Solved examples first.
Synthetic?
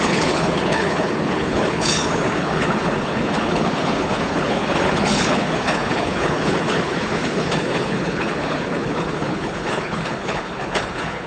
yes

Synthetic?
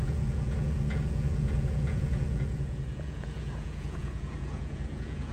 yes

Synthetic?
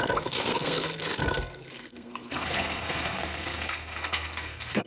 yes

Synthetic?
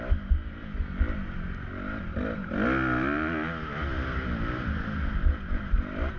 no